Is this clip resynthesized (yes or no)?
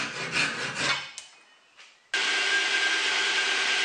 no